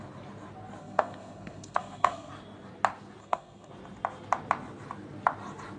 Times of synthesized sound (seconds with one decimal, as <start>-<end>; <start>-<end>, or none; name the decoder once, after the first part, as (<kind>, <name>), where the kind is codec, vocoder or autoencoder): 0.8-2.3 (codec, SNAC); 3.2-3.7